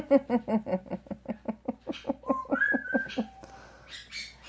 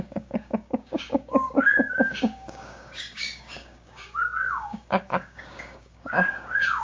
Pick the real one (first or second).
first